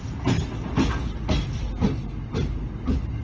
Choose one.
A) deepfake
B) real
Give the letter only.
B